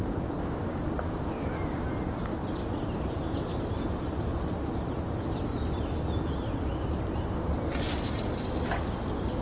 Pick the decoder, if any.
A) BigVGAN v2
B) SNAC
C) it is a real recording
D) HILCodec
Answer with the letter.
C